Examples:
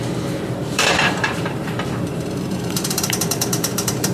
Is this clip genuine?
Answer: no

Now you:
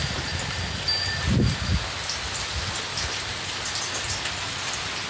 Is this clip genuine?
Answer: yes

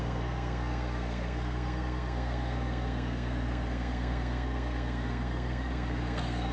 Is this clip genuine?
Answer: no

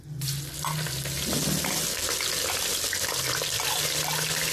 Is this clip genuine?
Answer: yes